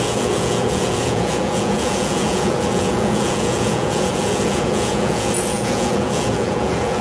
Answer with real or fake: fake